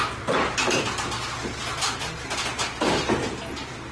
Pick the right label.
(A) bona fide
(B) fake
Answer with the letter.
A